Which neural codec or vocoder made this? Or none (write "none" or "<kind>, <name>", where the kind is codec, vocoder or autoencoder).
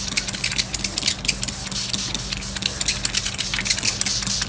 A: none